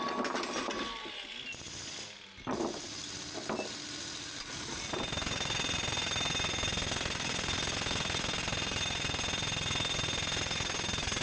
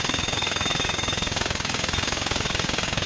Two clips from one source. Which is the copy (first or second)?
second